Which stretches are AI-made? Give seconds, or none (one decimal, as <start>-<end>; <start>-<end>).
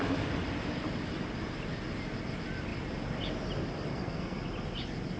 3.9-4.4